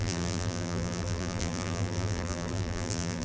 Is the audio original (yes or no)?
no